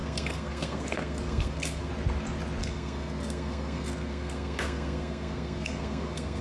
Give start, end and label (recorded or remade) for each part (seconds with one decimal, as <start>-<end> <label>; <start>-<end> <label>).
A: 0.0-1.9 remade; 1.9-2.6 recorded; 2.6-6.4 remade